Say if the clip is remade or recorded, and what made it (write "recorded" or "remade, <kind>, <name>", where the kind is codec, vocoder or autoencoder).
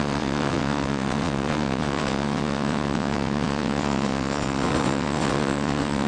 remade, vocoder, WaveNeXt